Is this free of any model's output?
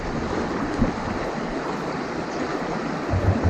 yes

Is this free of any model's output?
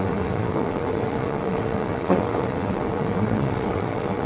no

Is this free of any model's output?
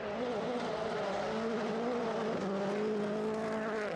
yes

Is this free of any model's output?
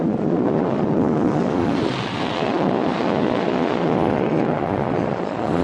no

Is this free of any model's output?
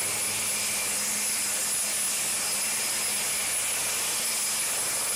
yes